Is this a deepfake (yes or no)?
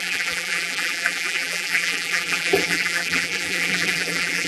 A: yes